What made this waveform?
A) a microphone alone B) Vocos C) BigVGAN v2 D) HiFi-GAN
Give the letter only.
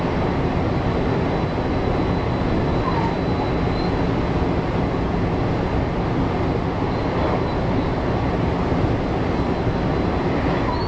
A